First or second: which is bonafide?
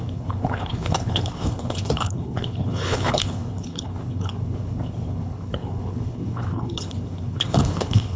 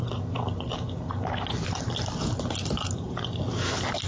second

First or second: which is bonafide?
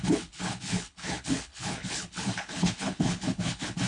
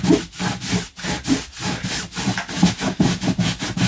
second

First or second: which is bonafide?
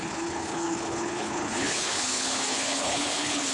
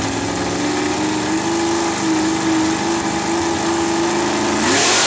second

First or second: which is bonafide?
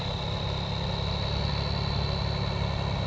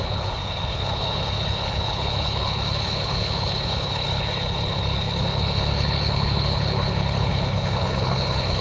first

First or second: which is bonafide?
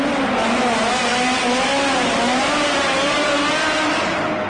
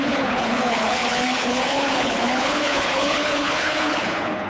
first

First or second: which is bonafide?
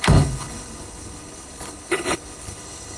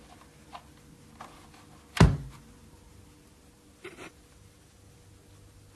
second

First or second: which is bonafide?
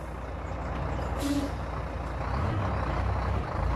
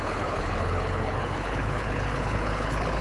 first